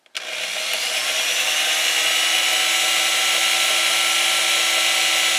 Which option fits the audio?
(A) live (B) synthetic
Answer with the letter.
A